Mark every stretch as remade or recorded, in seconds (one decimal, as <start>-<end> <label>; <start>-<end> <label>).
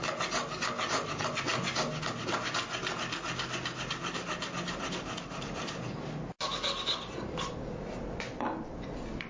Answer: 0.0-9.3 recorded